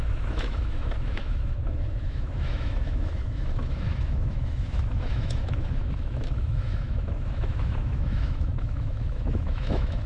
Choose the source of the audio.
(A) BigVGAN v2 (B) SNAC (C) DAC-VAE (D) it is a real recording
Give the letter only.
C